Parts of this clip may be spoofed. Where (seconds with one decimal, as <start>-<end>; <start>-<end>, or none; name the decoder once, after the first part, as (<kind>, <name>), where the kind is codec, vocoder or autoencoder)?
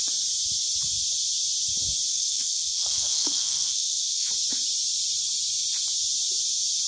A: 2.1-4.3 (codec, SNAC)